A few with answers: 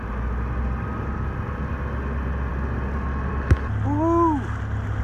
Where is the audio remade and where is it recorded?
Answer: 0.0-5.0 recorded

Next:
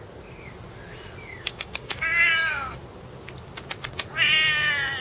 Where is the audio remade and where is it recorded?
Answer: 0.0-1.3 recorded; 1.3-2.7 remade; 2.7-5.0 recorded

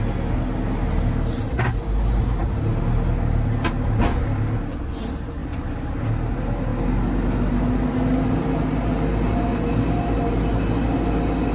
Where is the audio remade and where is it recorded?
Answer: 0.0-11.5 recorded

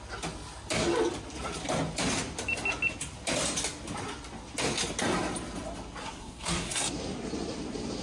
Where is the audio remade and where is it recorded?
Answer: 0.0-6.0 recorded; 6.0-7.0 remade; 7.0-8.0 recorded

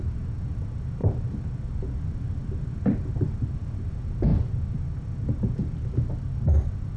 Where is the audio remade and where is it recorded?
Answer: 0.0-7.0 recorded

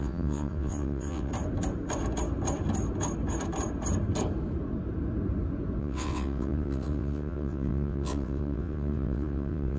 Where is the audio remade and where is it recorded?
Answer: 0.0-1.3 remade; 1.3-5.8 recorded; 5.8-9.8 remade